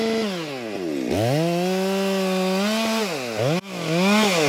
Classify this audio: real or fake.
real